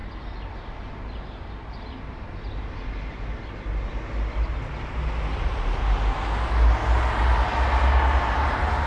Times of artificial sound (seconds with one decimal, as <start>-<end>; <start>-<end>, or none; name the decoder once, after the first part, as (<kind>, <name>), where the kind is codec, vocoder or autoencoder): none